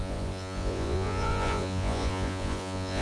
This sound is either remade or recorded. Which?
remade